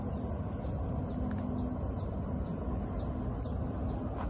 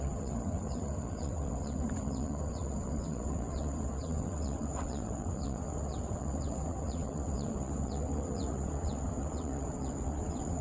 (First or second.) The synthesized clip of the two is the second